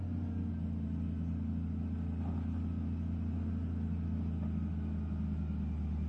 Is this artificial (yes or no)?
no